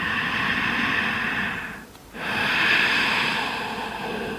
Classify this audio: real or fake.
real